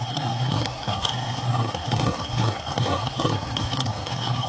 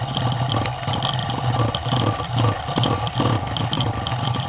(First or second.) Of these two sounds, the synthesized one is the first